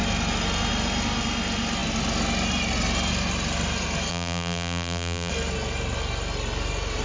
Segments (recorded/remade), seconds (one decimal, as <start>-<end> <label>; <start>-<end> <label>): 0.0-4.1 recorded; 4.1-5.3 remade; 5.3-7.0 recorded